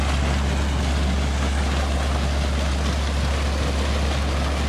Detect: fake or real real